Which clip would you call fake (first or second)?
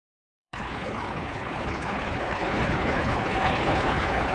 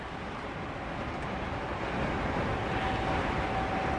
first